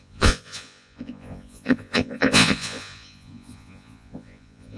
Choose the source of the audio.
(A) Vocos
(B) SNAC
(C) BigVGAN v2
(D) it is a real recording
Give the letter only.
A